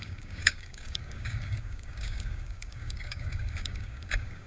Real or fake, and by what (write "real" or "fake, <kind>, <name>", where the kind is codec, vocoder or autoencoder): fake, codec, DAC